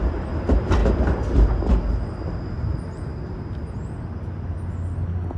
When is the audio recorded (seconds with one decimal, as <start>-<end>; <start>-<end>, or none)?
0.0-5.4